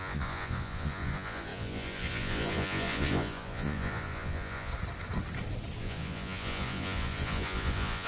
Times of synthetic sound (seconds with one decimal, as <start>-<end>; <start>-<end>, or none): 0.0-4.7; 5.8-8.1